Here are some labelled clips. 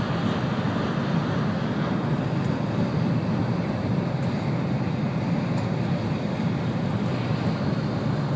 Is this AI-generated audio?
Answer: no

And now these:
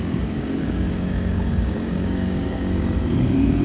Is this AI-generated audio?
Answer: yes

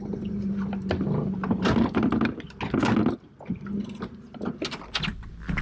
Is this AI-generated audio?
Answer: no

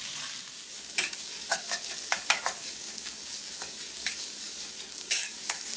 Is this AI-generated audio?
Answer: yes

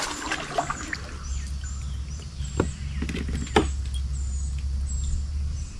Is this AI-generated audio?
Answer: no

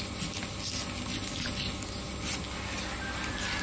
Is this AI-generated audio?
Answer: no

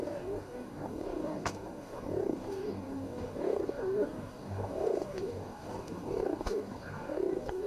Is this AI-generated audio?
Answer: yes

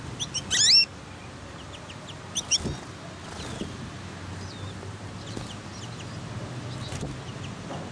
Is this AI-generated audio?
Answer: no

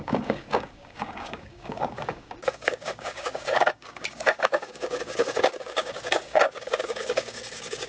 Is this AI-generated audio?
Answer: yes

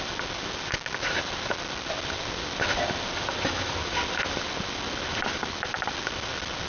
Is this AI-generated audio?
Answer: no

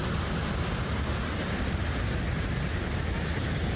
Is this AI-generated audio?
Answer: no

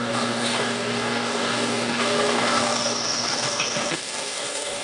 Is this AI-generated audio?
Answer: yes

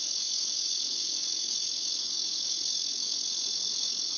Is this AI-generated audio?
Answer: yes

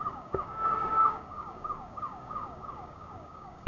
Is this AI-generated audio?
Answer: yes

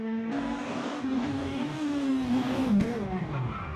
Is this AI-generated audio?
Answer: yes